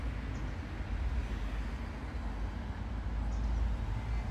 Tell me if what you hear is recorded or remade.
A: recorded